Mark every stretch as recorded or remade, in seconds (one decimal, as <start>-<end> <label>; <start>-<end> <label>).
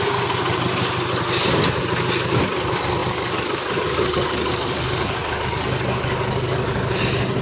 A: 0.0-3.0 recorded; 3.0-7.0 remade; 7.0-7.4 recorded